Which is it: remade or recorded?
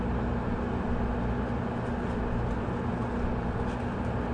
recorded